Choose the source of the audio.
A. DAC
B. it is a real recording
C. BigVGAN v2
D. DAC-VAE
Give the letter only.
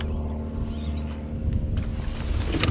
B